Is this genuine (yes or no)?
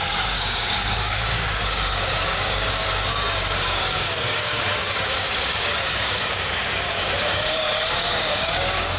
no